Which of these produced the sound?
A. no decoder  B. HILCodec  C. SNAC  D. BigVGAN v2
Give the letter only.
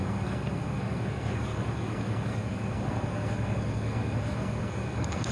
C